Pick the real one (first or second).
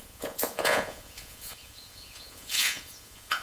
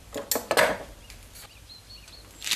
second